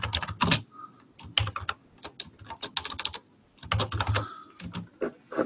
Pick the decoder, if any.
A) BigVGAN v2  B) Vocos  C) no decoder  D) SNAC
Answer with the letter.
C